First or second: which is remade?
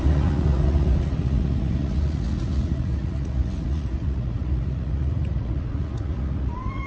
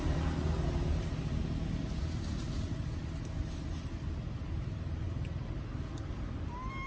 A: first